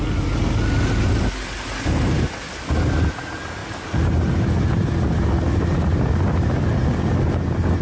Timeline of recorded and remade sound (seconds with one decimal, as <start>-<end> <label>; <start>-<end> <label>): 0.0-7.8 recorded